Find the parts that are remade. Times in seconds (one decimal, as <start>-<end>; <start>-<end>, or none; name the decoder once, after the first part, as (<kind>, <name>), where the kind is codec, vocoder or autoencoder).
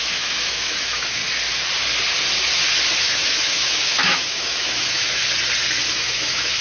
0.0-1.2 (autoencoder, DAC-VAE); 3.0-5.2; 5.9-6.6